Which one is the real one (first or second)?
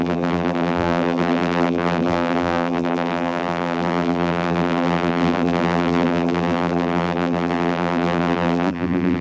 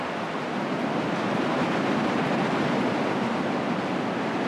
second